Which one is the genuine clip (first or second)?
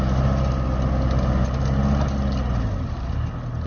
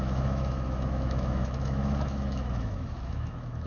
first